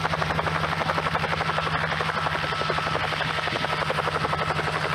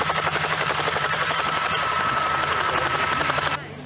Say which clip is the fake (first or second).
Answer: second